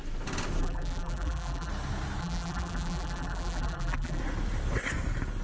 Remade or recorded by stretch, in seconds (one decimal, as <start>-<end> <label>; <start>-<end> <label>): 0.0-0.6 recorded; 0.6-1.7 remade; 1.7-2.2 recorded; 2.2-4.2 remade; 4.2-5.4 recorded